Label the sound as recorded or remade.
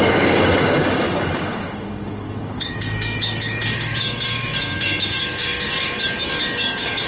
remade